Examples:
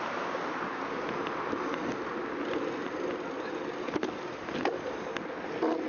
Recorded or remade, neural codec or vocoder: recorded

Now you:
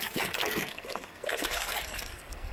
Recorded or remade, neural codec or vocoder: remade, codec, SNAC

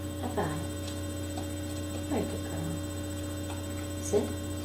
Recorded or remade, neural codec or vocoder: recorded